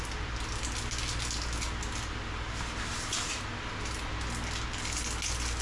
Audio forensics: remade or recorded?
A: recorded